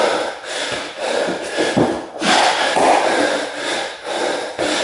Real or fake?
real